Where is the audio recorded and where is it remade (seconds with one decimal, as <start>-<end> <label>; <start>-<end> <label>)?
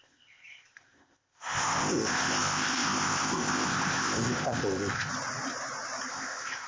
0.0-5.1 remade; 5.1-6.1 recorded; 6.1-6.7 remade